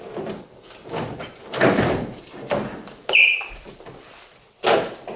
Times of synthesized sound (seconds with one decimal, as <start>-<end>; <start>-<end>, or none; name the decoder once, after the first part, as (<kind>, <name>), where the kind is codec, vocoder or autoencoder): 0.8-2.4 (vocoder, BigVGAN v2); 3.3-4.1